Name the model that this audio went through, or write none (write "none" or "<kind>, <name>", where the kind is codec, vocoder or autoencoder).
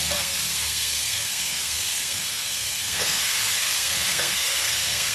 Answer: codec, SNAC